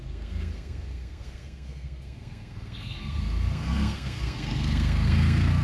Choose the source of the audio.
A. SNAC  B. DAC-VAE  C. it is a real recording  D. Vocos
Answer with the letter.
A